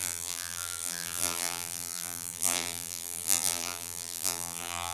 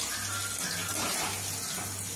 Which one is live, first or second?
second